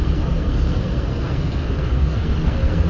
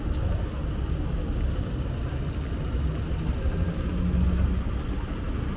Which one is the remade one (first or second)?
first